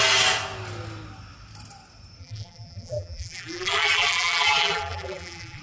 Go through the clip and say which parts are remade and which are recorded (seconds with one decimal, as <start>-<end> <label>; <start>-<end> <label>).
0.0-2.2 recorded; 2.2-5.6 remade